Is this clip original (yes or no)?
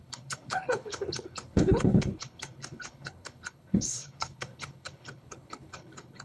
no